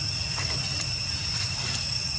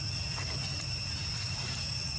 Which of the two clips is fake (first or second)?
first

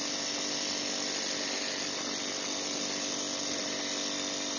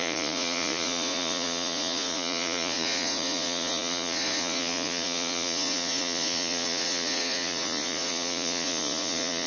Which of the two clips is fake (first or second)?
second